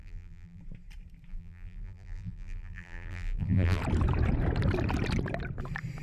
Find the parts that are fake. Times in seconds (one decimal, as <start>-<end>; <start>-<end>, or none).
0.0-0.6; 1.3-3.8